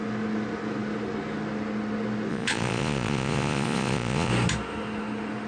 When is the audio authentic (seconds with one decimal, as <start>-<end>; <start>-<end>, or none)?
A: 0.0-2.3; 4.3-5.5